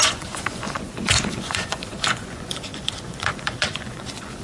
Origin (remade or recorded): remade